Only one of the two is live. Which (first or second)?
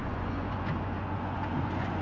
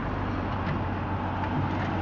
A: second